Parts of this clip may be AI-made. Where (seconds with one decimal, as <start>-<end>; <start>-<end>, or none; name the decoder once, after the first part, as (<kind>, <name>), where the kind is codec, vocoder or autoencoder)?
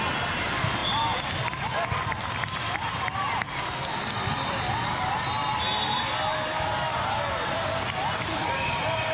none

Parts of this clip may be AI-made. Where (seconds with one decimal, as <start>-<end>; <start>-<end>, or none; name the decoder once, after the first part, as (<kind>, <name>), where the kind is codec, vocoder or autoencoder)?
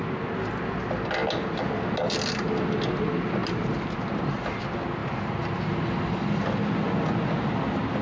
none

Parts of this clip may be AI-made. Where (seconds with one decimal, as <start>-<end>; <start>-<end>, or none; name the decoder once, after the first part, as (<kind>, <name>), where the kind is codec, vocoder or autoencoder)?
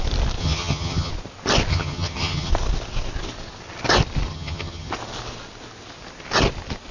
0.4-1.1 (vocoder, HiFi-GAN); 1.7-2.5; 4.3-4.9